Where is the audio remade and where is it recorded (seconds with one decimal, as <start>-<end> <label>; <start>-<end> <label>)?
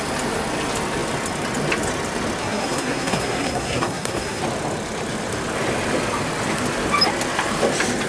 0.0-2.4 recorded; 2.4-4.4 remade; 4.4-8.1 recorded